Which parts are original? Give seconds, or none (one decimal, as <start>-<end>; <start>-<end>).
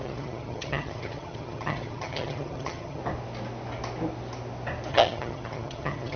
3.0-4.9